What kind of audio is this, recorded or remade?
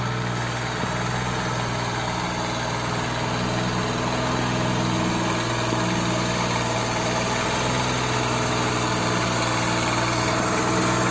recorded